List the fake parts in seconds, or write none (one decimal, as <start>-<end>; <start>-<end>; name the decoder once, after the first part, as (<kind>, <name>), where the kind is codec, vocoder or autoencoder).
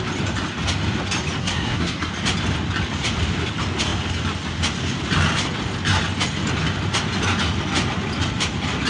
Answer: 1.4-2.1 (codec, SNAC)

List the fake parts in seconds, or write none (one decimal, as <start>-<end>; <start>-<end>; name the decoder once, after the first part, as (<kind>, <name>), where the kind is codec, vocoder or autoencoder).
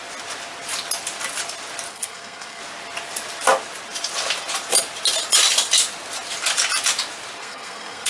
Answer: 1.9-2.6 (codec, SNAC); 7.4-8.1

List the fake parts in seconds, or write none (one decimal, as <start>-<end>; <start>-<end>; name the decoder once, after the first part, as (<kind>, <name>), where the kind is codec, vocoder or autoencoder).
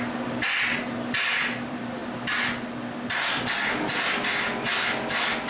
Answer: none